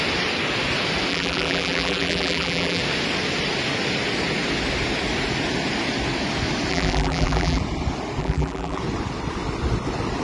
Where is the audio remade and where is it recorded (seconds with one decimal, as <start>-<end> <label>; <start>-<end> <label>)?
0.0-1.1 recorded; 1.1-2.8 remade; 2.8-6.7 recorded; 6.7-7.6 remade; 7.6-8.2 recorded; 8.2-8.8 remade; 8.8-10.2 recorded